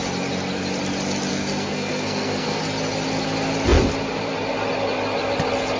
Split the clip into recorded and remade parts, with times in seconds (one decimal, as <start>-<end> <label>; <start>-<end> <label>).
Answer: 0.0-1.3 recorded; 1.3-2.6 remade; 2.6-5.8 recorded